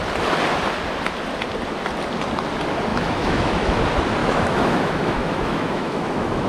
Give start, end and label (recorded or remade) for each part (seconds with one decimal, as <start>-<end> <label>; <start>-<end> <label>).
0.0-2.9 recorded; 2.9-3.8 remade; 3.8-4.2 recorded; 4.2-6.5 remade